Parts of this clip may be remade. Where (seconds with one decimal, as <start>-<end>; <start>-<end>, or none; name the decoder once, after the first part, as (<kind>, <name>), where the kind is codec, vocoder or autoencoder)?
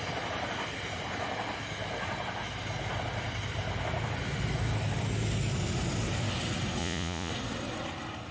6.8-7.3 (vocoder, Vocos)